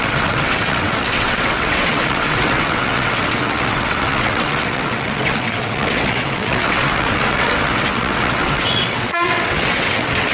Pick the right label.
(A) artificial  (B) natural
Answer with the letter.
A